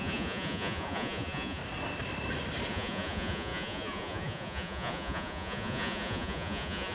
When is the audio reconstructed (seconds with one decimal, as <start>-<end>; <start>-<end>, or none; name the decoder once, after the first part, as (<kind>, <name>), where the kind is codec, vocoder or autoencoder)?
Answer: 0.0-1.6 (vocoder, Vocos); 2.7-6.9